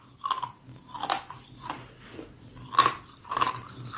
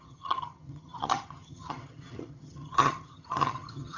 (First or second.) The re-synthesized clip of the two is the second